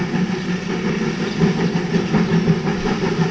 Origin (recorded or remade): recorded